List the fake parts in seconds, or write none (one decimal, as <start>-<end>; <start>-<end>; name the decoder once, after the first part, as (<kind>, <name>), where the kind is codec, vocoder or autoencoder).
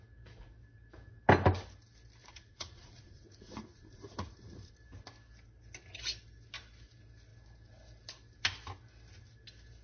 2.2-4.7 (vocoder, Vocos)